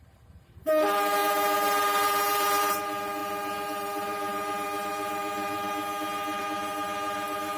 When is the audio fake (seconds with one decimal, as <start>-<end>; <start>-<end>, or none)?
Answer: 0.0-7.6